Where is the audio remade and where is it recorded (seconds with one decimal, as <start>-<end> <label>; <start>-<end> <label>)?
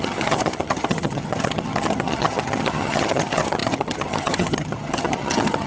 0.0-5.7 remade